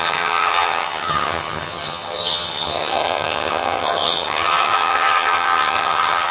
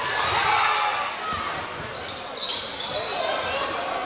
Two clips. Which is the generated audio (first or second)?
first